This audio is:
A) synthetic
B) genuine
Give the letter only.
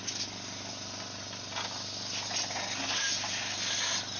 B